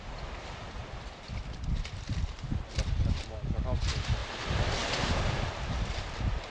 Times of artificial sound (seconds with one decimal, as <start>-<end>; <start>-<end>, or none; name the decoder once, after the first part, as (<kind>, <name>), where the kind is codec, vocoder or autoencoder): 0.8-1.4 (vocoder, BigVGAN v2); 4.2-6.5